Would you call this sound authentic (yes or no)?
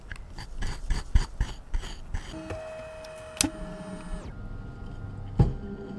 yes